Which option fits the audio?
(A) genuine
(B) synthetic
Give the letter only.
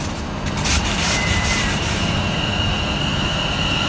B